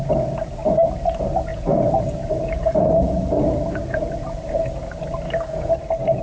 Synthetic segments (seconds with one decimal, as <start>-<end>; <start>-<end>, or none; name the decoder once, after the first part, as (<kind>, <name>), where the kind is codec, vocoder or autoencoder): 1.5-4.7 (vocoder, Vocos)